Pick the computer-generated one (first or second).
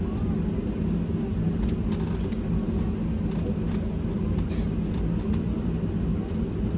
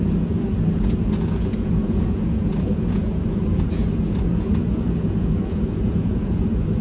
second